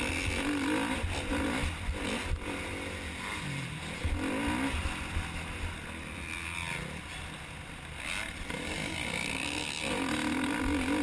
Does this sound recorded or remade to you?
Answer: recorded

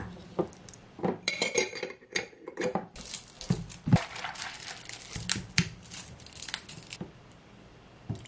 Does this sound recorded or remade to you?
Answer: remade